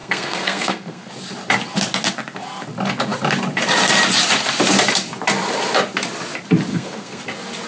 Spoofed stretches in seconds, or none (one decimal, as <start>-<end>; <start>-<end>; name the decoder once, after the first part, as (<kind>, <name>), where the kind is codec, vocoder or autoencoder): 0.0-1.1 (codec, SNAC); 6.7-7.2